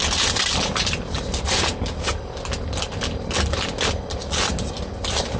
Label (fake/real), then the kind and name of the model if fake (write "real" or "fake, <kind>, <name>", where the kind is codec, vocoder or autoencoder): real